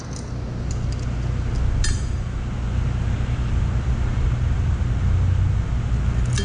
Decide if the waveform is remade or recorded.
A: recorded